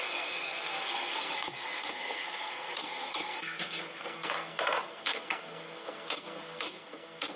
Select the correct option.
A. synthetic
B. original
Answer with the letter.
A